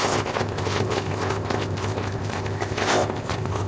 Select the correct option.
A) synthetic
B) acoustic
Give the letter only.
A